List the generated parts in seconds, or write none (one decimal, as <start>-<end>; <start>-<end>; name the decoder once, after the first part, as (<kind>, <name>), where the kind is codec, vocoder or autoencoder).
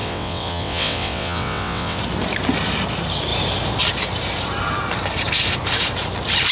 0.0-2.0 (vocoder, WaveNeXt)